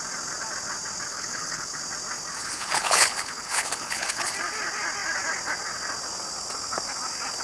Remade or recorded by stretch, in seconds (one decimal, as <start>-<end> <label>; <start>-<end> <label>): 0.0-1.1 recorded; 1.1-1.8 remade; 1.8-2.4 recorded; 2.4-4.3 remade; 4.3-7.4 recorded